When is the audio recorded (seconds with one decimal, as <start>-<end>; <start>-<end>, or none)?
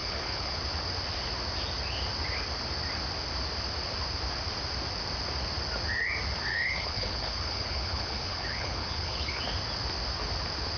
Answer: 0.6-6.5; 9.4-10.8